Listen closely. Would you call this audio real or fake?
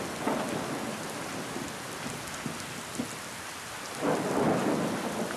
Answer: real